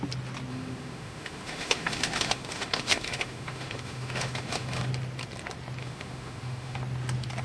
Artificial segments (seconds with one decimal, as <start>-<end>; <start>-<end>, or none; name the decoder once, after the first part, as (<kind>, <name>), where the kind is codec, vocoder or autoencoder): 0.5-4.9 (autoencoder, DAC-VAE); 5.8-6.8